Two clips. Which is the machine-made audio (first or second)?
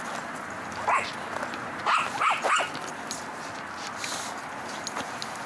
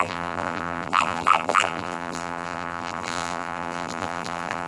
second